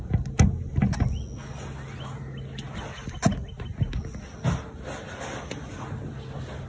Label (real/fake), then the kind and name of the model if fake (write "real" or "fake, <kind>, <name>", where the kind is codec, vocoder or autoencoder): real